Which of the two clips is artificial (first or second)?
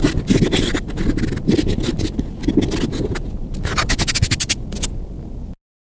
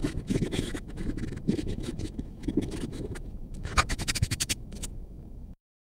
second